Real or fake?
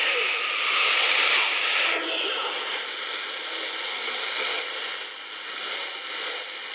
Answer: real